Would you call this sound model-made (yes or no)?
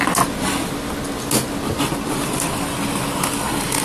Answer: no